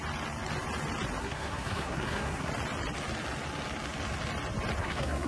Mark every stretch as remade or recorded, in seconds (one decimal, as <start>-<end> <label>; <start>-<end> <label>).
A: 0.0-1.2 recorded; 1.2-2.5 remade; 2.5-4.8 recorded; 4.8-5.3 remade